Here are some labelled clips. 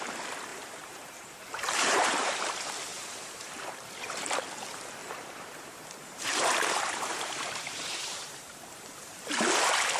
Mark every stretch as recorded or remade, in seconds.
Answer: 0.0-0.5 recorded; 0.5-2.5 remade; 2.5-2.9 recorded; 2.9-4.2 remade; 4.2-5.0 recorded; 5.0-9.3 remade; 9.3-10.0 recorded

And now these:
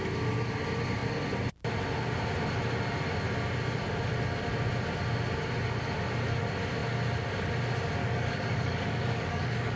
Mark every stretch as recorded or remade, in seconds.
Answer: 0.0-8.0 recorded; 8.0-9.8 remade

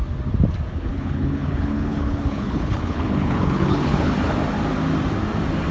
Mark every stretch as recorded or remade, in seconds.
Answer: 0.0-0.7 recorded; 0.7-4.1 remade; 4.1-5.7 recorded

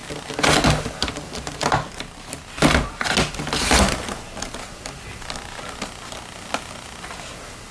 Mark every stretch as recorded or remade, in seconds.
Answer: 0.0-7.7 recorded

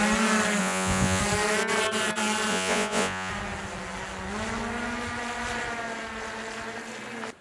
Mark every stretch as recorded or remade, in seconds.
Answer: 0.0-0.6 recorded; 0.6-1.2 remade; 1.2-2.5 recorded; 2.5-3.3 remade; 3.3-7.4 recorded